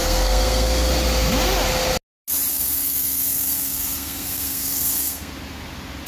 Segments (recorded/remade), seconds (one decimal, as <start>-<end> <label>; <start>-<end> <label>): 0.0-0.9 remade; 0.9-2.5 recorded; 2.5-5.3 remade; 5.3-6.1 recorded